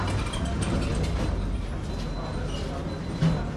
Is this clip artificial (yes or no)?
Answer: no